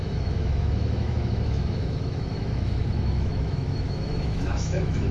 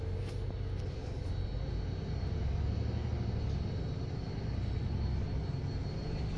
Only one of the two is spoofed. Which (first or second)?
first